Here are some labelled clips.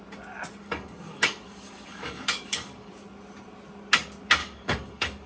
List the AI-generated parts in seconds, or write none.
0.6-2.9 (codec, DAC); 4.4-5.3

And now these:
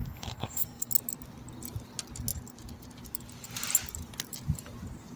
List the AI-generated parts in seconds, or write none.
0.0-0.9 (codec, SNAC)

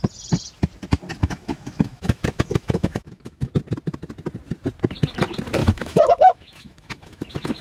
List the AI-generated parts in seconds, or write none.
1.2-3.5 (autoencoder, DAC-VAE); 5.6-7.6